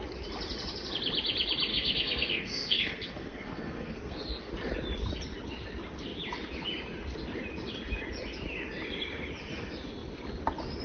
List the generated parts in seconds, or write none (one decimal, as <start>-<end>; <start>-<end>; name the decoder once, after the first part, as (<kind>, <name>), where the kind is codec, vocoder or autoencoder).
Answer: 1.7-4.5 (codec, SNAC)